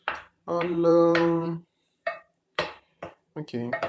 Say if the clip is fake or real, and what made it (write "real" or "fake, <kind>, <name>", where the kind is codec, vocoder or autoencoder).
fake, vocoder, BigVGAN v2